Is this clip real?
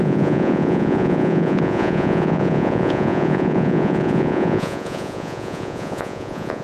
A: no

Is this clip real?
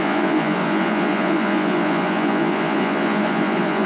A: no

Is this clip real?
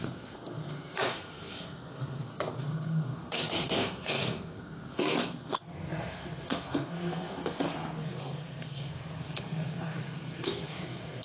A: no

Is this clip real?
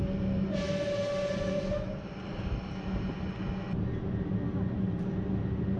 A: yes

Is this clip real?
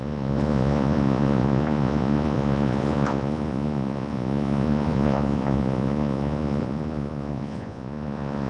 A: no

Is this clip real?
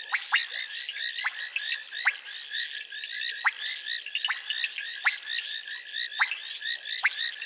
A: yes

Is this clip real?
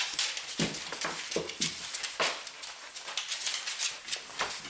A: yes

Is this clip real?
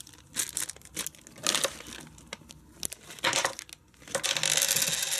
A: yes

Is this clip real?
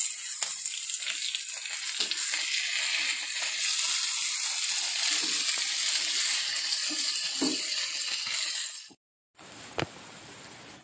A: yes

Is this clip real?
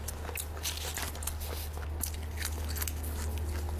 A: yes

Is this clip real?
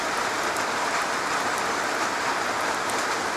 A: yes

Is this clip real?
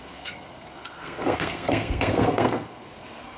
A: no